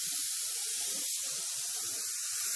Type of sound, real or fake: fake